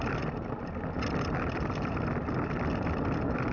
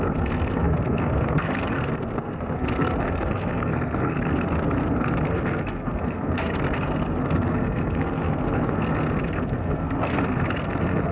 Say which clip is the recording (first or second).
first